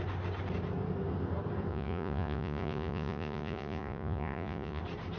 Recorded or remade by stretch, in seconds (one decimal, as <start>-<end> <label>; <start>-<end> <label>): 0.0-1.7 recorded; 1.7-4.8 remade; 4.8-5.2 recorded